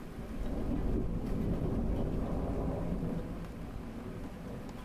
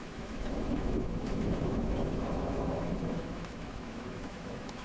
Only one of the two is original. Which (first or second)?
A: first